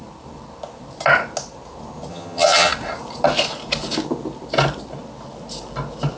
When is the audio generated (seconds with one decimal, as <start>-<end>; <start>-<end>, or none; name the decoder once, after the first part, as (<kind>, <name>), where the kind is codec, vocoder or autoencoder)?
2.1-2.7 (vocoder, HiFi-GAN)